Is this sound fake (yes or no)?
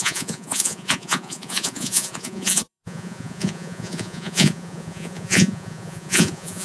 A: yes